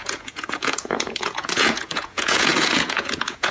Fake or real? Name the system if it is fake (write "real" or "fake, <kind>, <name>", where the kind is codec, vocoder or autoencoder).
fake, vocoder, Vocos